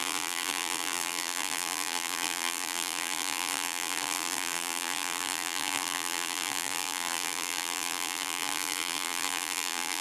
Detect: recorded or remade remade